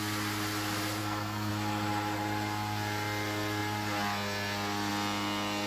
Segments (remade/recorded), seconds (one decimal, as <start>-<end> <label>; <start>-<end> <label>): 0.0-1.0 recorded; 1.0-1.5 remade; 1.5-5.7 recorded